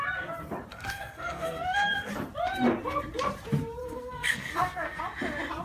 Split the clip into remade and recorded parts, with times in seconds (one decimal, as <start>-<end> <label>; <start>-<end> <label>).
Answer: 0.0-0.7 recorded; 0.7-2.1 remade; 2.1-3.8 recorded; 3.8-5.0 remade; 5.0-5.6 recorded